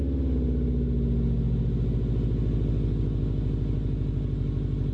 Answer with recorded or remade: recorded